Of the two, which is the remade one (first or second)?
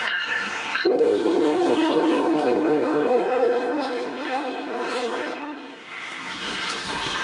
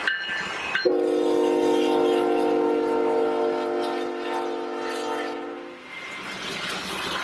first